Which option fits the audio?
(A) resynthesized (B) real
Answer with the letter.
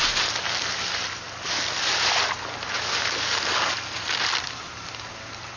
B